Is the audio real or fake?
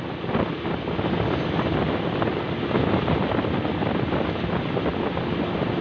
real